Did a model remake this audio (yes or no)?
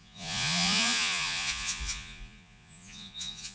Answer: yes